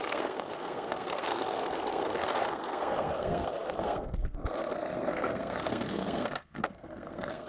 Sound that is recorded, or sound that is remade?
remade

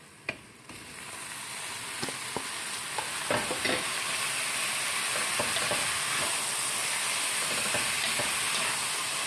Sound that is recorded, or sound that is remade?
recorded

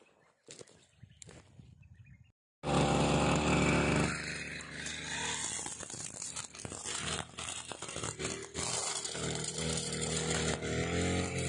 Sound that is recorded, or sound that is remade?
recorded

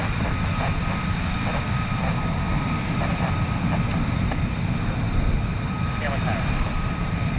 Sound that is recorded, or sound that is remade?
recorded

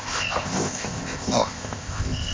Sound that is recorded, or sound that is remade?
remade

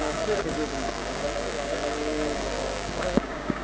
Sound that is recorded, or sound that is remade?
remade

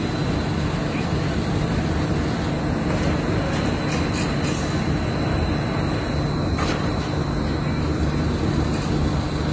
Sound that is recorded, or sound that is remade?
recorded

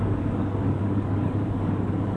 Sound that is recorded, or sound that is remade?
remade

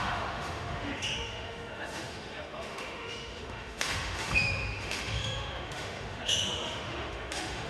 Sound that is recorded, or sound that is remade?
remade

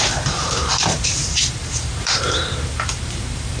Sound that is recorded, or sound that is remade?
remade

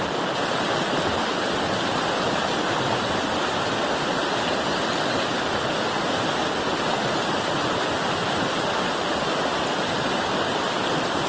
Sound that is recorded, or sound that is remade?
recorded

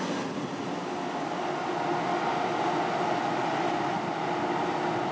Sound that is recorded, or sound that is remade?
recorded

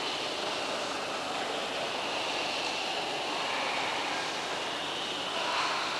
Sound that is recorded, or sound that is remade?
recorded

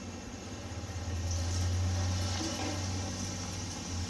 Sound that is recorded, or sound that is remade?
recorded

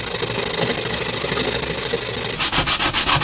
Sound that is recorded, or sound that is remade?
recorded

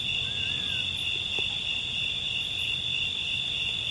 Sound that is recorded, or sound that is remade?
recorded